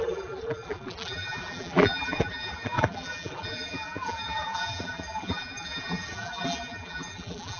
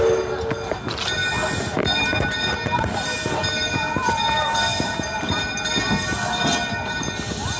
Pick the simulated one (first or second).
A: first